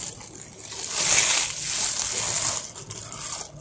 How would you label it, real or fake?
real